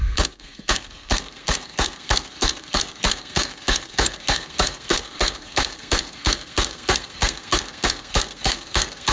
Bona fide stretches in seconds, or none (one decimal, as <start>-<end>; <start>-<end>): none